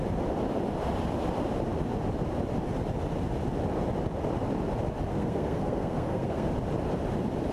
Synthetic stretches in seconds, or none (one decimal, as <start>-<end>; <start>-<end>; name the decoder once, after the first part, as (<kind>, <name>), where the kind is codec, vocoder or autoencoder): 5.1-6.5 (codec, SNAC)